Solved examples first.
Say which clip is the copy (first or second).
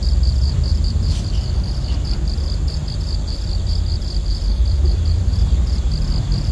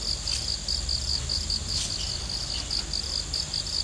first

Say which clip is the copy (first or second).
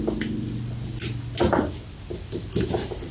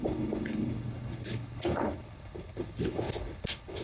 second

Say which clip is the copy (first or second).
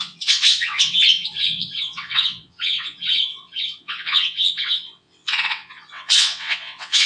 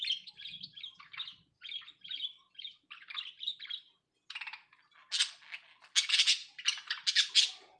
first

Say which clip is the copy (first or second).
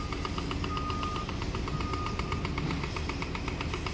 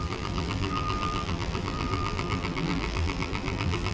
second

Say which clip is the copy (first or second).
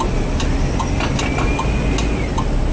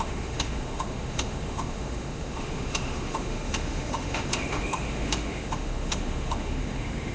second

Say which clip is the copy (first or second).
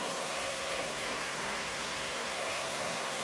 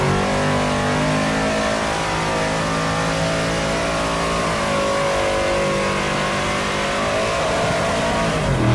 first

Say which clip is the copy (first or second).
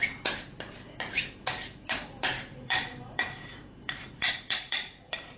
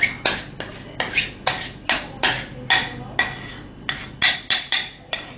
first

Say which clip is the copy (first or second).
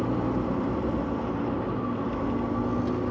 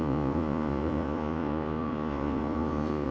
second